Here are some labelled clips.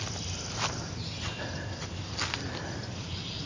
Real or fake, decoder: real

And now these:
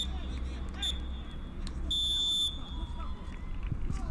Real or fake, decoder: real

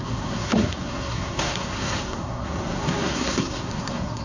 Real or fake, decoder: fake, codec, SNAC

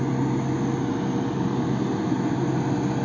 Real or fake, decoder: real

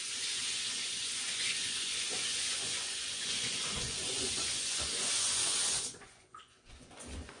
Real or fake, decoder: fake, vocoder, Vocos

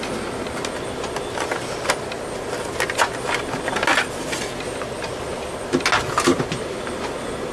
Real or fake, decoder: real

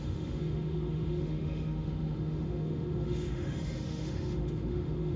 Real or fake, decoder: fake, autoencoder, DAC-VAE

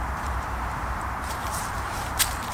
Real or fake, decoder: fake, vocoder, BigVGAN v2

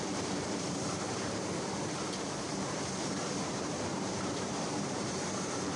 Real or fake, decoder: fake, vocoder, BigVGAN v2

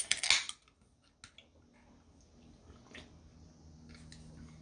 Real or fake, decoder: real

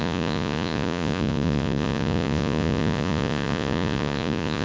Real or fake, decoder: fake, vocoder, Vocos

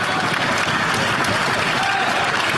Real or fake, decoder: real